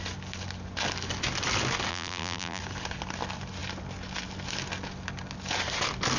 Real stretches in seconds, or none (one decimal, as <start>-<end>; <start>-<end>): 0.0-1.9; 2.6-6.2